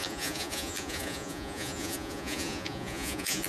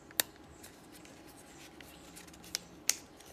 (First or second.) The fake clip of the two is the first